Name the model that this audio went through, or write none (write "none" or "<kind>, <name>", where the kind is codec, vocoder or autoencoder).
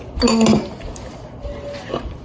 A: none